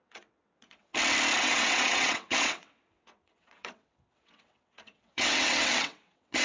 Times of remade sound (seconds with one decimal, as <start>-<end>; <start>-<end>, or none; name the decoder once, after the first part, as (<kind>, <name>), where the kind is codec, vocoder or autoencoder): 0.0-0.9 (vocoder, WaveNeXt); 1.4-6.4